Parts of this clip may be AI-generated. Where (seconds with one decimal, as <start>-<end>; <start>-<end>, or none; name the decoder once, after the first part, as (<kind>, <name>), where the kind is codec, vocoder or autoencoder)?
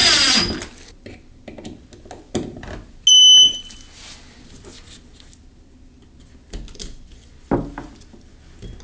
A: none